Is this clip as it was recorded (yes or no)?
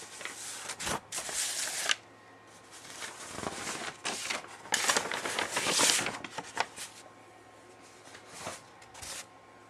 yes